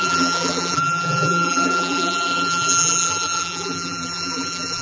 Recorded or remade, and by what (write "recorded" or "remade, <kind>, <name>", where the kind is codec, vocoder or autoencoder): remade, vocoder, BigVGAN v2